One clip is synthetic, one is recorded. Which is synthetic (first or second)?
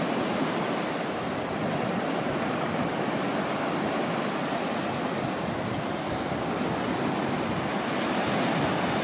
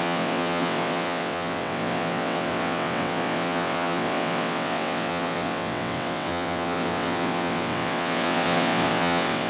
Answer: second